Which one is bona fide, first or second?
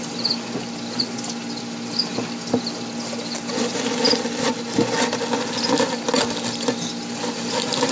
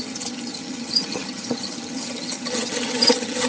first